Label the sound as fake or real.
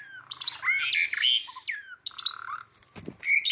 real